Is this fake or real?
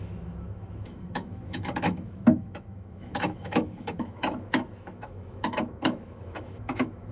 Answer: fake